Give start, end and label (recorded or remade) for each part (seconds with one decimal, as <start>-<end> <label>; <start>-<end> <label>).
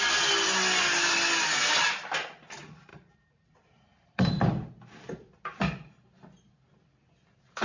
0.0-2.9 recorded; 2.9-4.3 remade; 4.3-7.6 recorded